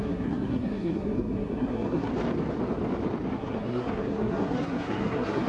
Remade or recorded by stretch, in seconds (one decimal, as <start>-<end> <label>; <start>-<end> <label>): 0.0-2.1 remade; 2.1-3.3 recorded; 3.3-5.5 remade

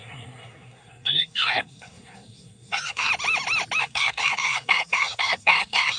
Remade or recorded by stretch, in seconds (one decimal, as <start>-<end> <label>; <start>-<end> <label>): 0.0-3.1 remade; 3.1-3.8 recorded; 3.8-6.0 remade